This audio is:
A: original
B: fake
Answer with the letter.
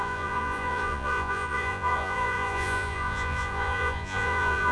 B